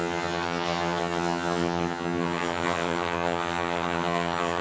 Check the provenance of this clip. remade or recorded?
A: remade